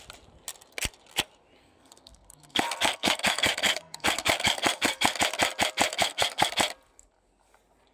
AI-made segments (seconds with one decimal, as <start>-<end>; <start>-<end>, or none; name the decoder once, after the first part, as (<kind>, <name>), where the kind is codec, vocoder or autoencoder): 1.6-5.2 (codec, SNAC); 5.9-6.5